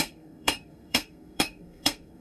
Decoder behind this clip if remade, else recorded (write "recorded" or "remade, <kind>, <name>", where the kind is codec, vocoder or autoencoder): remade, codec, SNAC